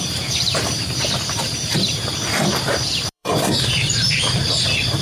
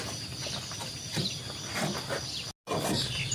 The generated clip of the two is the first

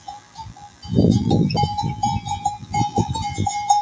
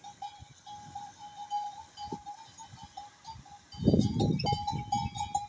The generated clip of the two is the first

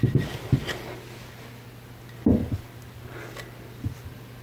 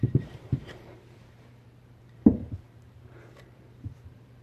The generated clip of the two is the second